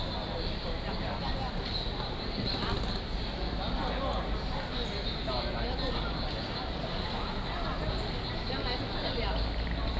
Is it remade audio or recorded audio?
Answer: recorded